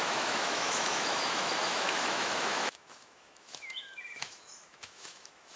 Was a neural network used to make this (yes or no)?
yes